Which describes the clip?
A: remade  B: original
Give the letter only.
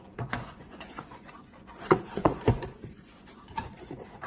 A